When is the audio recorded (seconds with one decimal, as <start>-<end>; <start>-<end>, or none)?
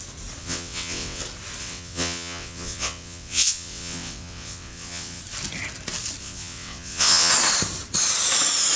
0.0-0.4; 1.2-1.6; 5.2-6.2; 7.3-8.8